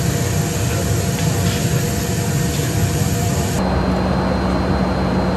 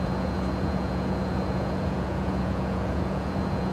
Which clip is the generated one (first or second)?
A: second